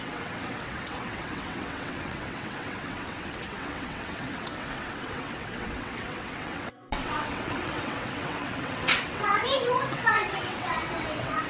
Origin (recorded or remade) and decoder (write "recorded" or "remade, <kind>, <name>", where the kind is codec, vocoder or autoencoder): remade, vocoder, WaveNeXt